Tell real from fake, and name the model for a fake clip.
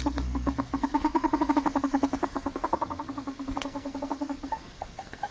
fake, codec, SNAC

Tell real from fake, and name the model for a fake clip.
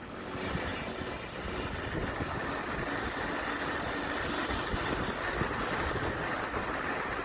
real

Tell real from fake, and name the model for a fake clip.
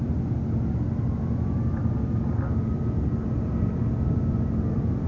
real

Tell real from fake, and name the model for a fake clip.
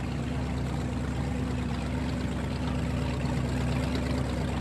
real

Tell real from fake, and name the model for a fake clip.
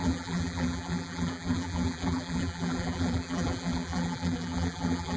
fake, vocoder, BigVGAN v2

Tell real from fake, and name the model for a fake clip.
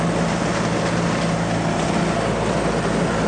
real